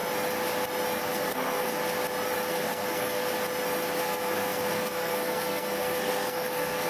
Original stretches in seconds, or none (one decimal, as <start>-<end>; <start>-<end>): 0.0-1.0; 1.8-2.5; 3.2-4.0